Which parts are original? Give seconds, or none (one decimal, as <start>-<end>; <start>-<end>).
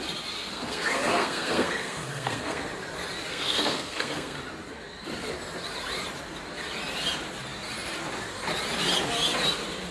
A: 0.0-0.4; 2.6-3.3; 4.4-9.9